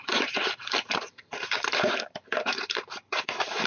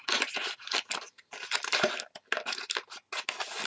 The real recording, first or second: second